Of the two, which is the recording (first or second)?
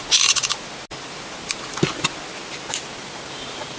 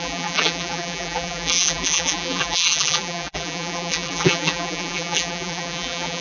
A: first